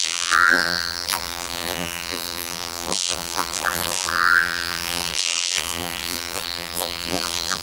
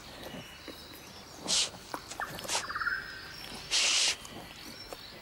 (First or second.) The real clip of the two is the second